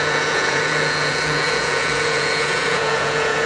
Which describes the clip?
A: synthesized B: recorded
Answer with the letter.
A